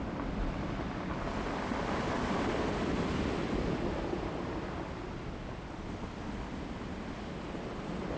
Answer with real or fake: real